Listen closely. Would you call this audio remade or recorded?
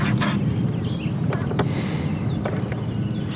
recorded